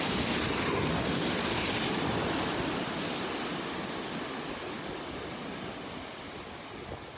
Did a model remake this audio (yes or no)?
no